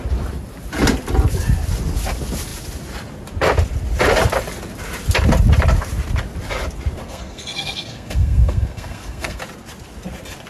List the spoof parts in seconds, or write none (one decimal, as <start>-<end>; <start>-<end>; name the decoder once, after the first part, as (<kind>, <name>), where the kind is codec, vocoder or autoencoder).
7.0-9.4 (codec, SNAC)